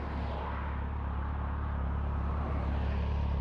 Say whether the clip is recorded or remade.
recorded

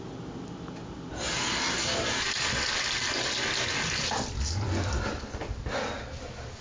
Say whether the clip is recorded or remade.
recorded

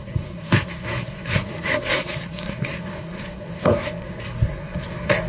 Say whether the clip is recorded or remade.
remade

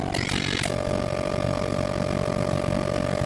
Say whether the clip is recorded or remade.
recorded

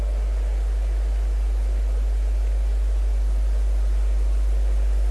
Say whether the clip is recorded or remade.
recorded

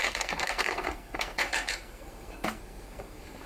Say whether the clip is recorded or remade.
remade